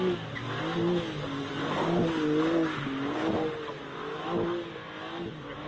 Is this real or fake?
real